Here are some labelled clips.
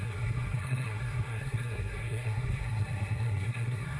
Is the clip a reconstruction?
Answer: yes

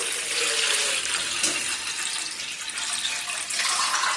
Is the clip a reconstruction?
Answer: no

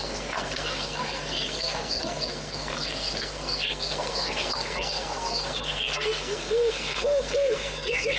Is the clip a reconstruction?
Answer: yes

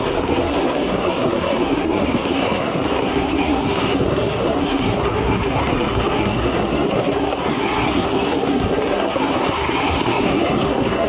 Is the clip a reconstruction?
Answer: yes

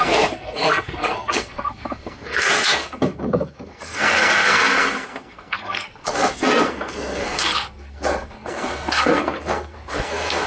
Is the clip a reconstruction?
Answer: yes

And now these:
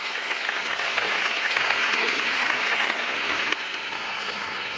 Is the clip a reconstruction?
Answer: yes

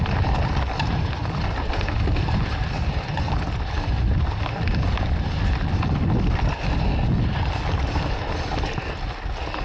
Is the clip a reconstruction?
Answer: no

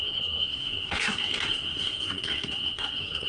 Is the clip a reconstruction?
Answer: yes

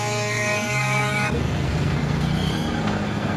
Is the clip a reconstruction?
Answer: yes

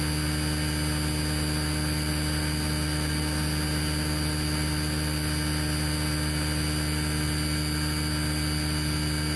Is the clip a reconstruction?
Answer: no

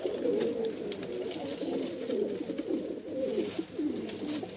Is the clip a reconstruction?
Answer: no